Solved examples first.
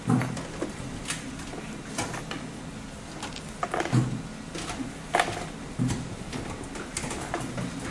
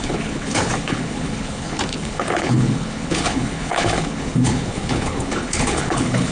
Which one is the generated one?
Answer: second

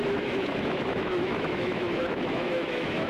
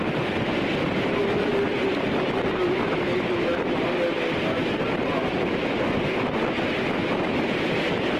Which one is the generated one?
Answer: first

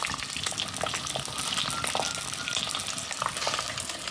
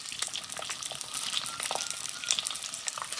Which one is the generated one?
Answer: second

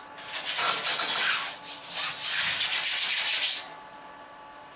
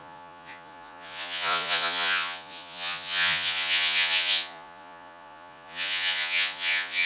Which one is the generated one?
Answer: second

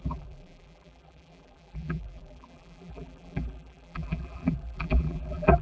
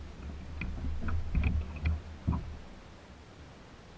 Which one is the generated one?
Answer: first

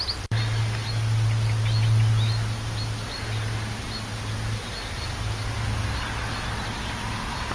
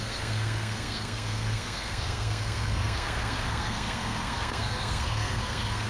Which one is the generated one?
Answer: second